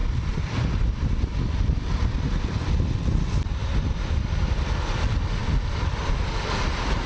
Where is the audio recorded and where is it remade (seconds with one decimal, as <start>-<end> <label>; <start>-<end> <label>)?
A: 0.0-3.0 remade; 3.0-3.6 recorded; 3.6-4.6 remade; 4.6-5.4 recorded; 5.4-6.1 remade; 6.1-7.1 recorded